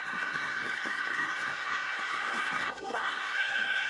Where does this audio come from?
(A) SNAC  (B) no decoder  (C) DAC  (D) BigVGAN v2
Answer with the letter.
A